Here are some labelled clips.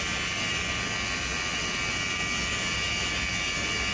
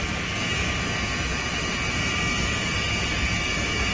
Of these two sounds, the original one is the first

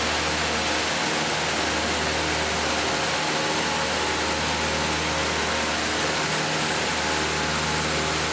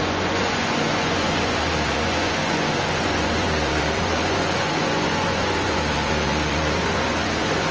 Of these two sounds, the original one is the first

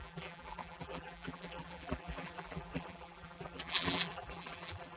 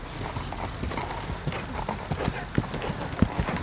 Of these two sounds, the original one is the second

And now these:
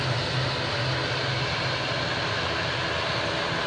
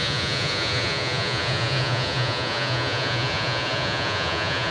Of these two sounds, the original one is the first